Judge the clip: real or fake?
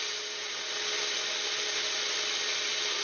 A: real